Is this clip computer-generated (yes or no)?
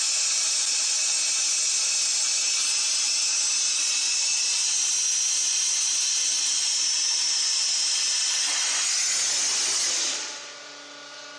no